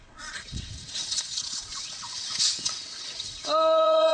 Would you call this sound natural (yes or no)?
no